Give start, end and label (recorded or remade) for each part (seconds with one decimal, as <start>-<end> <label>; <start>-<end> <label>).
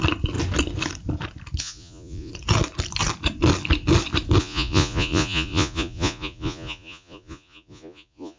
0.0-1.6 recorded; 1.6-2.3 remade; 2.3-4.4 recorded; 4.4-8.4 remade